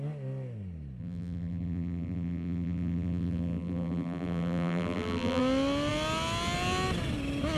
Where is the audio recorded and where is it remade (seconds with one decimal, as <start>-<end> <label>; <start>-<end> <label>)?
0.0-1.0 recorded; 1.0-5.4 remade; 5.4-7.6 recorded